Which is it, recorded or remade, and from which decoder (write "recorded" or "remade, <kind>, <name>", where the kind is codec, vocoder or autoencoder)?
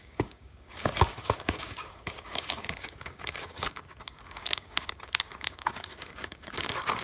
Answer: remade, codec, DAC